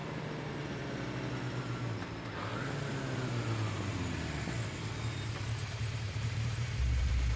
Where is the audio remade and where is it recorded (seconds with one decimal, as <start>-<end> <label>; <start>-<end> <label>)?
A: 0.0-1.6 recorded; 1.6-2.5 remade; 2.5-5.8 recorded; 5.8-7.4 remade